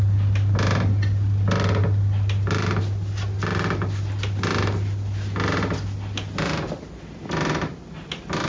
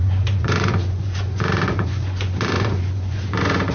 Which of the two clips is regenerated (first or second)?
second